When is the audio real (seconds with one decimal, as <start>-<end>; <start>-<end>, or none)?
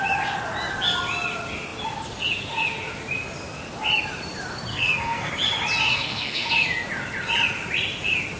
0.0-4.7; 5.3-5.9; 6.5-8.4